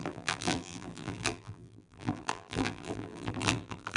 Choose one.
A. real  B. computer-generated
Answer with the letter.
B